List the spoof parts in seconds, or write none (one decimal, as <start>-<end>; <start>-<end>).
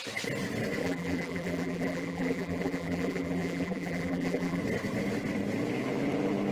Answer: 0.8-4.6